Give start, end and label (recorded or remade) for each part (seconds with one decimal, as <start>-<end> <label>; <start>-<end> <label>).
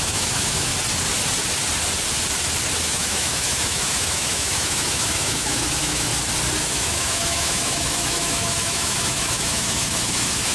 0.0-0.7 remade; 0.7-2.8 recorded; 2.8-6.1 remade; 6.1-6.6 recorded; 6.6-10.5 remade